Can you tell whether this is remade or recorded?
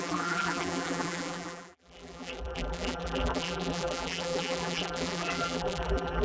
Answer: remade